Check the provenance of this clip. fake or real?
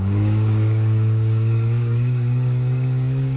fake